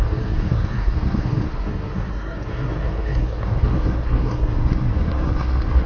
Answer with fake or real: fake